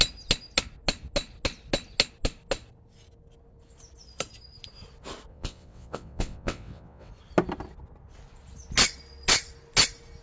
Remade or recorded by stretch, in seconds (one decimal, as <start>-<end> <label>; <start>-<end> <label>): 0.0-5.3 recorded; 5.3-7.1 remade; 7.1-10.2 recorded